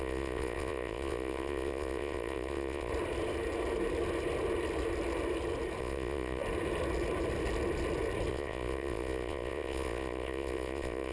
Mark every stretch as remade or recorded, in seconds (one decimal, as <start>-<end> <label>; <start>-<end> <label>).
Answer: 0.0-2.9 remade; 2.9-5.8 recorded; 5.8-6.4 remade; 6.4-8.3 recorded; 8.3-11.1 remade